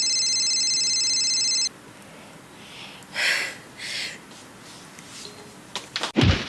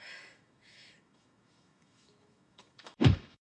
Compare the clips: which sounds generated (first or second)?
second